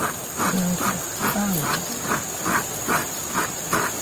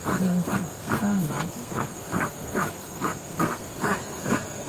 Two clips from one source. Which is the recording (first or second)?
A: first